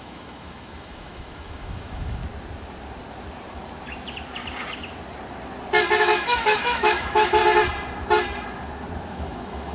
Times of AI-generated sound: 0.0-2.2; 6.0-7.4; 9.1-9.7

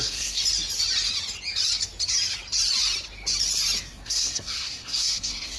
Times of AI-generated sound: 0.0-0.4; 3.8-5.6

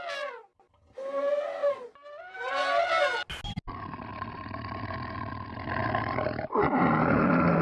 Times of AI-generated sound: none